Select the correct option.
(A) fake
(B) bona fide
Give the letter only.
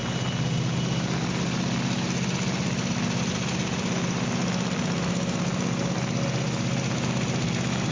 B